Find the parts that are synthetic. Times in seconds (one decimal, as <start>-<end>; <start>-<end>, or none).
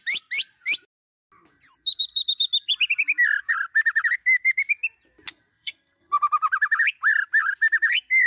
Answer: 5.5-6.1